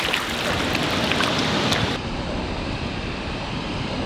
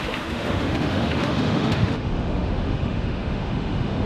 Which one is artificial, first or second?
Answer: second